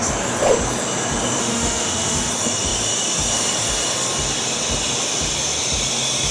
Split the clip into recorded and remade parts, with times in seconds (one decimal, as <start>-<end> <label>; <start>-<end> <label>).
0.0-1.4 recorded; 1.4-2.3 remade; 2.3-6.3 recorded